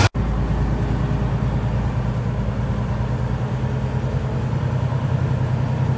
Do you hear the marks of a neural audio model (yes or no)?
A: no